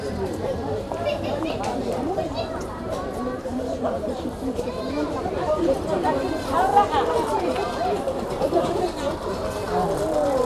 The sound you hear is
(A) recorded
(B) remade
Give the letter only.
B